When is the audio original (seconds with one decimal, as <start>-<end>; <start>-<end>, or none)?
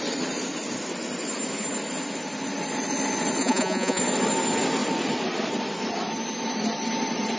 0.0-3.4; 4.0-7.4